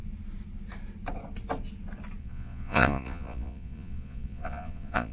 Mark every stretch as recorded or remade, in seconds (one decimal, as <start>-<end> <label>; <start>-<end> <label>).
0.0-2.2 recorded; 2.2-5.1 remade

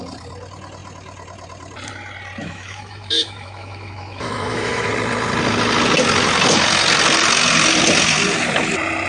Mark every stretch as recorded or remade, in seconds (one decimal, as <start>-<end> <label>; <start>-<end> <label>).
0.0-2.4 recorded; 2.4-4.9 remade; 4.9-9.1 recorded

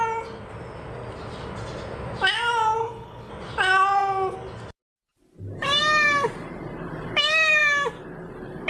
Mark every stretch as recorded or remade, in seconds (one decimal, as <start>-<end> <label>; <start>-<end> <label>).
0.0-2.8 recorded; 2.8-3.3 remade; 3.3-8.7 recorded

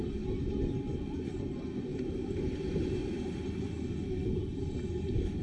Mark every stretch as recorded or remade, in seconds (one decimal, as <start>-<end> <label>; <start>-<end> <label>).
0.0-1.9 recorded; 1.9-3.0 remade; 3.0-5.4 recorded

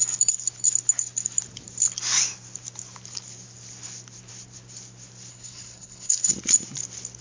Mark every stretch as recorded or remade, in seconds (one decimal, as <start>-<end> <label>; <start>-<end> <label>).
0.0-5.3 recorded; 5.3-6.3 remade; 6.3-7.2 recorded